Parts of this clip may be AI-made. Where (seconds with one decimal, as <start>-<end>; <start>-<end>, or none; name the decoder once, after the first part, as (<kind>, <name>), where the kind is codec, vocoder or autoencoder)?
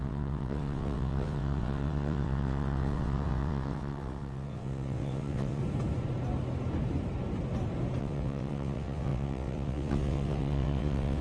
0.0-5.6 (vocoder, WaveNeXt); 8.0-11.2